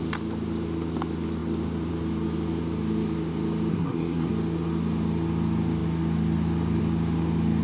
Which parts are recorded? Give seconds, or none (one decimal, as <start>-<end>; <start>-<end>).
0.0-3.7; 4.3-7.6